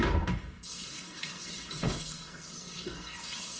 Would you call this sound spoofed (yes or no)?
yes